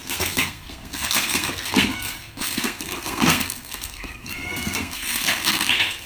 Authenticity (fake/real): fake